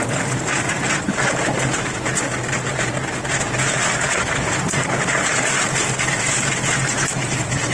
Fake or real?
real